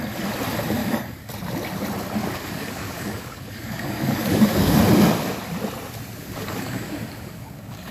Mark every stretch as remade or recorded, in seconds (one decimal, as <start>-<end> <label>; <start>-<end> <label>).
0.0-0.8 recorded; 0.8-1.3 remade; 1.3-2.2 recorded; 2.2-4.8 remade; 4.8-6.2 recorded; 6.2-7.9 remade